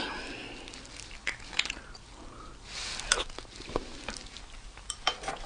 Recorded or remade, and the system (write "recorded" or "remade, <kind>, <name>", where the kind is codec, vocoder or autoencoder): recorded